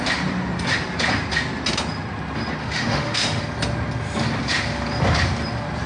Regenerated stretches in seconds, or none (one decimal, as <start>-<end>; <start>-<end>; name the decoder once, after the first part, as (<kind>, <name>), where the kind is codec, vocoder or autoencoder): 2.6-3.4 (autoencoder, DAC-VAE)